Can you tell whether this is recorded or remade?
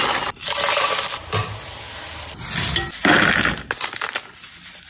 recorded